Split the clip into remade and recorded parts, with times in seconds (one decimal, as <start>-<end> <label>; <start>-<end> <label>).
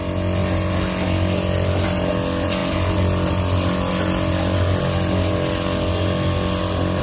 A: 0.0-7.0 recorded